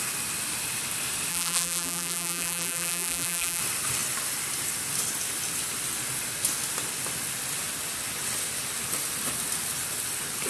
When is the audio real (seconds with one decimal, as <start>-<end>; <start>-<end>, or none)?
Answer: 0.0-1.3; 3.6-10.5